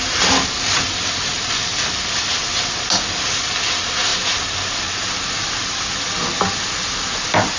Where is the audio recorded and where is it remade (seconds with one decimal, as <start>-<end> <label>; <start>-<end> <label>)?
0.0-7.6 recorded